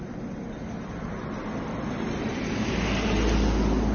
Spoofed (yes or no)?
no